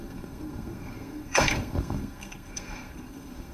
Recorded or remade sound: remade